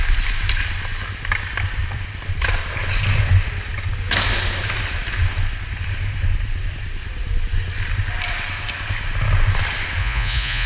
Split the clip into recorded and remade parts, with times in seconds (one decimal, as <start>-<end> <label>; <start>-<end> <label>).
0.0-10.0 recorded; 10.0-10.7 remade